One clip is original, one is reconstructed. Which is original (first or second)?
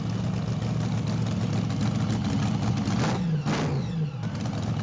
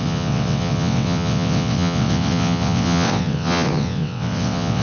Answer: first